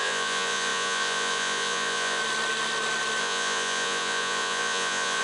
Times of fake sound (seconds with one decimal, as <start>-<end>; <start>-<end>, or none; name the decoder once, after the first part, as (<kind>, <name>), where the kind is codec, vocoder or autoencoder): 0.0-2.2 (vocoder, Vocos); 3.2-5.2

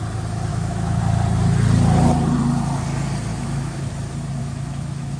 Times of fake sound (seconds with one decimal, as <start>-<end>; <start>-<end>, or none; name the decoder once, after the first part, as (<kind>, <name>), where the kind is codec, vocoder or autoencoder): 0.5-1.0 (autoencoder, DAC-VAE); 3.3-3.9; 4.4-5.2

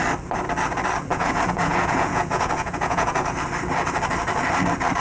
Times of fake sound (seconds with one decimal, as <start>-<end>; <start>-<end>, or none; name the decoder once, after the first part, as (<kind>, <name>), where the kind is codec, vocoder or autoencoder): 1.1-3.3 (vocoder, Vocos)